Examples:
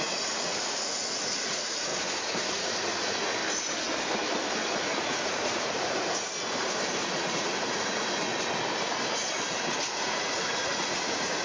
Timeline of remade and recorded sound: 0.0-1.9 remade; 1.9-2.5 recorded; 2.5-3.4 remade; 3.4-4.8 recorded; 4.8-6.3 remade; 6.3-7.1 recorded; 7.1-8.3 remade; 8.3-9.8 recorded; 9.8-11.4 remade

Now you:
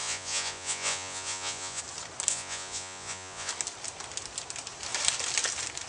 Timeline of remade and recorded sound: 0.0-1.8 remade; 1.8-2.3 recorded; 2.3-3.5 remade; 3.5-5.9 recorded

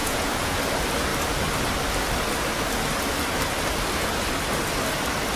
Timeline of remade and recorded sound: 0.0-0.6 remade; 0.6-5.4 recorded

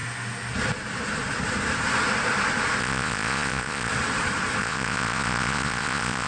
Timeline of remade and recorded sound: 0.0-2.8 recorded; 2.8-3.9 remade; 3.9-4.6 recorded; 4.6-6.3 remade

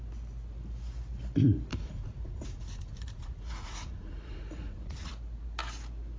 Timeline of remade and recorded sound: 0.0-1.7 recorded; 1.7-5.1 remade; 5.1-6.2 recorded

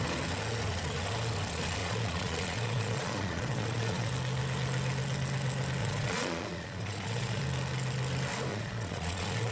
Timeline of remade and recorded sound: 0.0-1.8 recorded; 1.8-4.1 remade; 4.1-5.8 recorded; 5.8-7.4 remade; 7.4-8.5 recorded; 8.5-9.5 remade

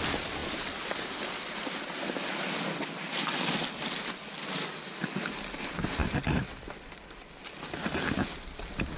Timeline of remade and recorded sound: 0.0-9.0 recorded

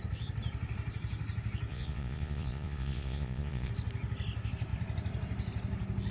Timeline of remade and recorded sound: 0.0-1.7 recorded; 1.7-3.7 remade; 3.7-6.1 recorded